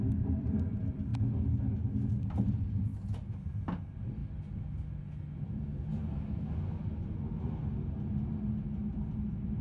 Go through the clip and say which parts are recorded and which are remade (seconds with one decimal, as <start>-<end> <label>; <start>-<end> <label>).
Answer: 0.0-1.1 remade; 1.1-2.1 recorded; 2.1-2.9 remade; 2.9-3.4 recorded; 3.4-4.2 remade; 4.2-5.0 recorded; 5.0-9.6 remade